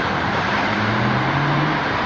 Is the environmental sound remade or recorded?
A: remade